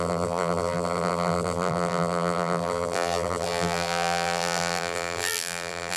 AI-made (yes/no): yes